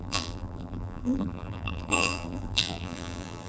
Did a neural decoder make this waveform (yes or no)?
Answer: yes